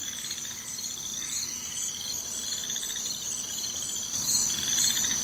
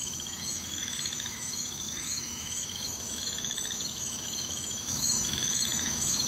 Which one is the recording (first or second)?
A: first